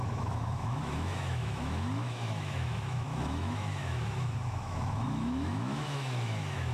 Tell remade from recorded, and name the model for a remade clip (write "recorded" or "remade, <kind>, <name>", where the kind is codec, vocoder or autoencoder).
remade, autoencoder, DAC-VAE